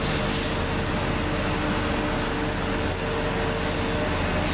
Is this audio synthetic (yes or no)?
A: no